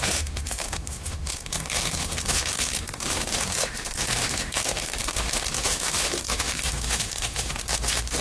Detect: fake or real fake